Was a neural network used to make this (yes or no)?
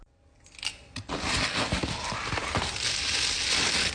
no